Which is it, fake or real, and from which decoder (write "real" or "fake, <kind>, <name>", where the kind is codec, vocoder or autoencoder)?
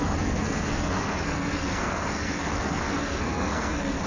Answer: fake, codec, SNAC